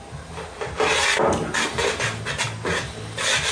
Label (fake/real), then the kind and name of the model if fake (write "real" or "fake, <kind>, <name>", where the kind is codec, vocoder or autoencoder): real